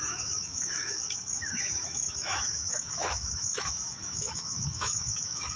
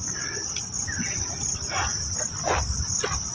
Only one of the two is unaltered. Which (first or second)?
second